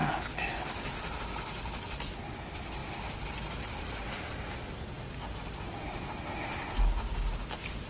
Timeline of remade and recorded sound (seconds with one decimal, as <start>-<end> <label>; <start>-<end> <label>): 0.0-7.9 recorded